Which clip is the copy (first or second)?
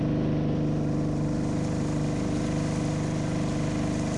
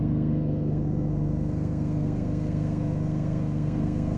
second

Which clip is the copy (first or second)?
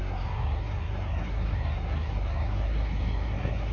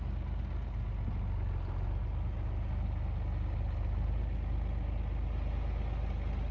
first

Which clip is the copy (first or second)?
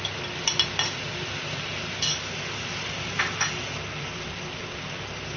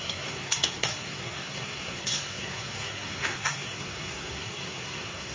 second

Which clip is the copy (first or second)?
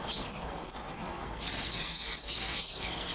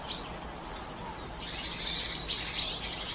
first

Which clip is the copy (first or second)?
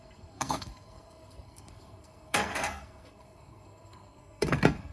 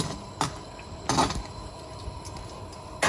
first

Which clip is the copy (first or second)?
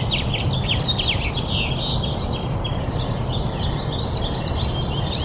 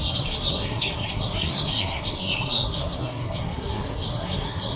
second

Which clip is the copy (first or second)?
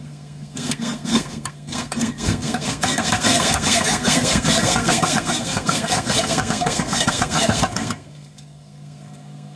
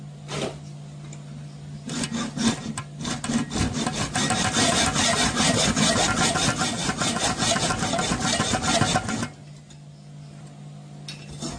first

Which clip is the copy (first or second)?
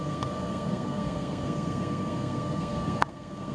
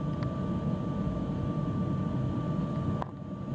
first